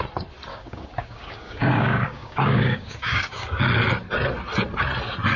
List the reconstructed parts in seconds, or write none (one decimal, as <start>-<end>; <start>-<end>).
0.5-3.6